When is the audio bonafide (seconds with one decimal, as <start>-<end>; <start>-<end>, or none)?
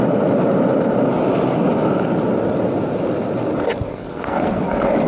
0.0-3.9; 4.6-5.1